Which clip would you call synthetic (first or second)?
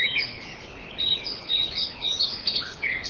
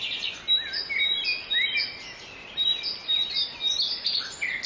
first